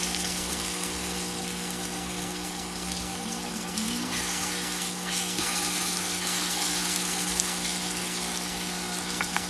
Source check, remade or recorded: remade